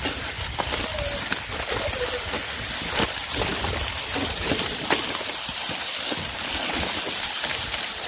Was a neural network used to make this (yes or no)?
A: no